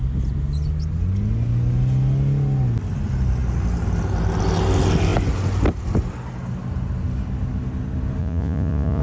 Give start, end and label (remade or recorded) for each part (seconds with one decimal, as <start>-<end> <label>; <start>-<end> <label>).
0.0-8.2 recorded; 8.2-9.0 remade